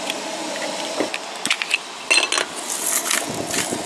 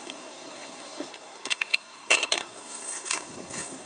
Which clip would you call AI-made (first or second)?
second